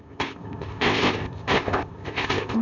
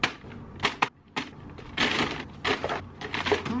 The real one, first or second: second